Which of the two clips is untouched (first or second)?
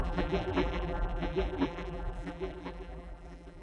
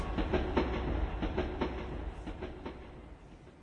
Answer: second